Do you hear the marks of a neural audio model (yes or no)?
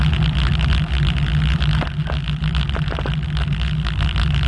no